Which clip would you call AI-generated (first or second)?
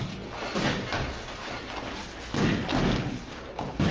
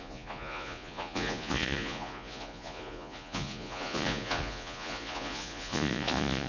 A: second